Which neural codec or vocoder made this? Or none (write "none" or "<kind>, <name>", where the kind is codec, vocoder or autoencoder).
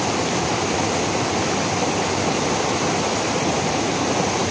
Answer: none